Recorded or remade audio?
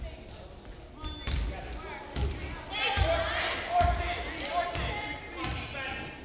recorded